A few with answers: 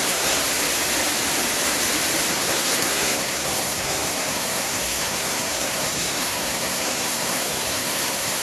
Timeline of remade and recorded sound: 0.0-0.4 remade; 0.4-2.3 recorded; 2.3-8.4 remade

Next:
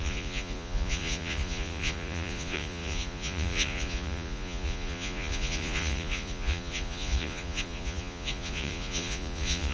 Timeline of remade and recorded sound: 0.0-9.7 remade